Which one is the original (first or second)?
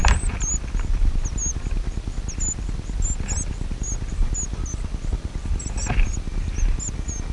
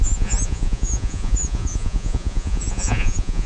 first